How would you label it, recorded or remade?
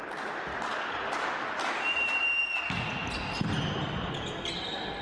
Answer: recorded